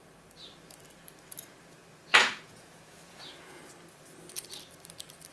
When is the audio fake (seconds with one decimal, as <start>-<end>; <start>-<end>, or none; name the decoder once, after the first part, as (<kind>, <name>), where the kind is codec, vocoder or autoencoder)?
2.1-3.6 (vocoder, Vocos)